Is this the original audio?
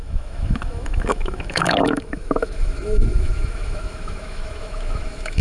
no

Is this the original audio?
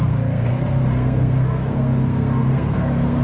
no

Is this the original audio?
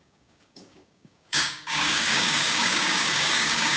no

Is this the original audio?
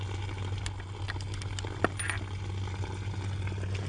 yes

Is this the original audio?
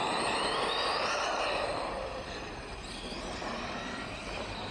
yes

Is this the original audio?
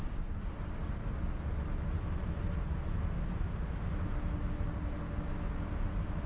yes